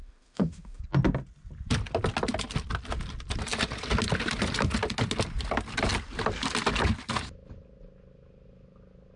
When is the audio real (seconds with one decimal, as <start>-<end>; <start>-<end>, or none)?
0.8-9.2